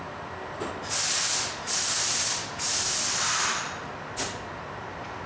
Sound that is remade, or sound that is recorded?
recorded